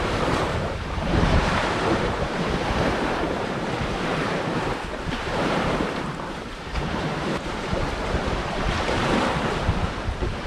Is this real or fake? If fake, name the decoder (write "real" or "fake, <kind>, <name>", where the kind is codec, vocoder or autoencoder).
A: fake, vocoder, BigVGAN v2